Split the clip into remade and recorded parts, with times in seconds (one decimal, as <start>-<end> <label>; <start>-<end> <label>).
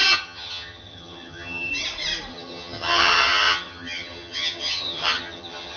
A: 0.0-1.7 remade; 1.7-2.3 recorded; 2.3-5.8 remade